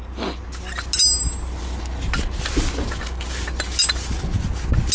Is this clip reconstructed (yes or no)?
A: no